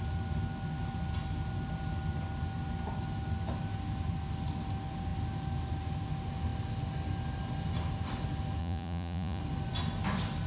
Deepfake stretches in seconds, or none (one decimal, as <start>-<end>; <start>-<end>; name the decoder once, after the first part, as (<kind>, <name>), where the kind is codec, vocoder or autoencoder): 8.6-9.4 (vocoder, Vocos)